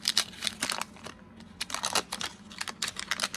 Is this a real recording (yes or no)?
yes